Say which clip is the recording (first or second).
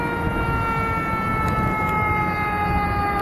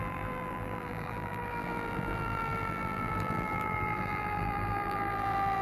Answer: first